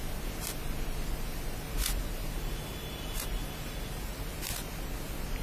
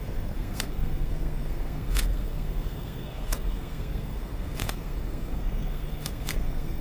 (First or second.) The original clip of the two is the first